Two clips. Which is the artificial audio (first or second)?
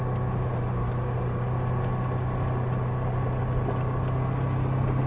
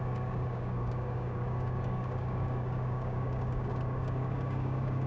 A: second